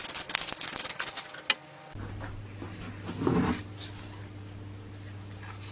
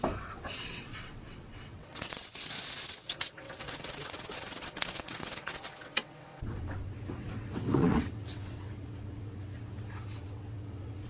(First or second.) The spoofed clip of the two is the second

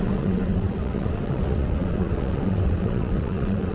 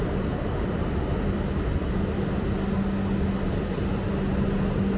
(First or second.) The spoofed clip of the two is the first